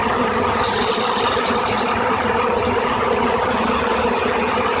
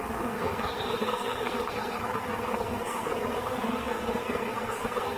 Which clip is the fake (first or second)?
second